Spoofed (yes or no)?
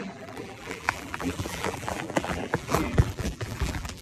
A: yes